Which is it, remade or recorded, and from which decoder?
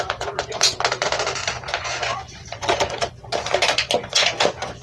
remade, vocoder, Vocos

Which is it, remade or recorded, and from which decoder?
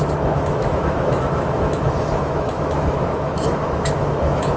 remade, autoencoder, DAC-VAE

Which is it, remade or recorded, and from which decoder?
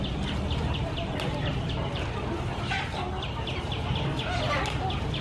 recorded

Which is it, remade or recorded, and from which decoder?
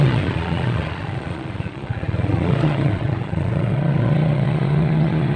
remade, vocoder, Vocos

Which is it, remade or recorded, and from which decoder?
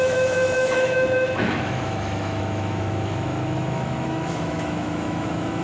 remade, autoencoder, DAC-VAE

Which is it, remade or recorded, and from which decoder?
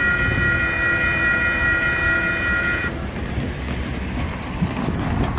recorded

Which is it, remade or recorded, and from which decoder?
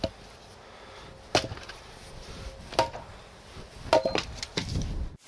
recorded